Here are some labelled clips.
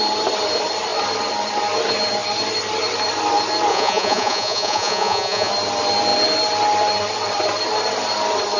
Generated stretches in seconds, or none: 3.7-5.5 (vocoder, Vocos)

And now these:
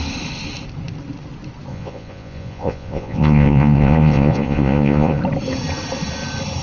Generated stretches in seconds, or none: 1.7-5.2 (vocoder, Vocos)

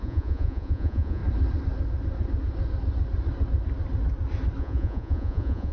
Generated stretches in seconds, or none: 0.0-1.2 (vocoder, Vocos); 4.6-5.7